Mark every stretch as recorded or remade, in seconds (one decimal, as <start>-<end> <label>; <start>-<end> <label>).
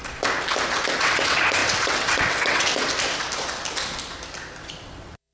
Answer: 0.0-1.0 recorded; 1.0-2.7 remade; 2.7-4.6 recorded; 4.6-5.3 remade